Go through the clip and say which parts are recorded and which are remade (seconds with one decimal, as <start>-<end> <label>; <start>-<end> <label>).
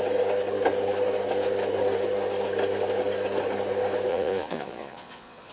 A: 0.0-4.1 recorded; 4.1-5.5 remade